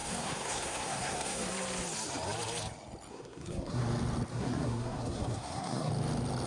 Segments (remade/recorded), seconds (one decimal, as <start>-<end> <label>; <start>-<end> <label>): 0.0-1.5 remade; 1.5-3.1 recorded; 3.1-3.8 remade; 3.8-4.3 recorded; 4.3-5.9 remade; 5.9-6.5 recorded